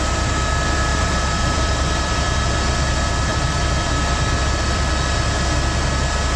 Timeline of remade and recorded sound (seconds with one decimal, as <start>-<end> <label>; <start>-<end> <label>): 0.0-0.9 recorded; 0.9-2.9 remade; 2.9-3.3 recorded; 3.3-4.9 remade; 4.9-6.4 recorded